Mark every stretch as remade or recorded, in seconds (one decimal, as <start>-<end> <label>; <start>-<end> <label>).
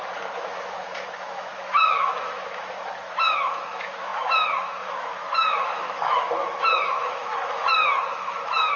0.0-8.8 remade